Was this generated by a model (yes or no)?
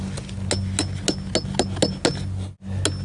no